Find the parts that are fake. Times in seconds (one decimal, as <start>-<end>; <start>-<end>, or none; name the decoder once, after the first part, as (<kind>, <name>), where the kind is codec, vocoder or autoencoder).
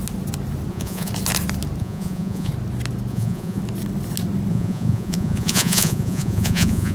0.7-1.1 (vocoder, Vocos); 1.8-2.5; 3.1-3.6; 4.5-6.9